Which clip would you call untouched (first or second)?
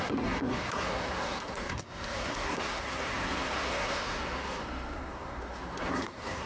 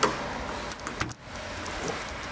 second